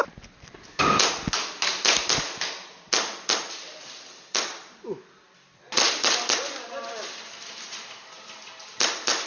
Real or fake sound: real